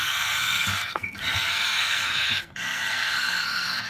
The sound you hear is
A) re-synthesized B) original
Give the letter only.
A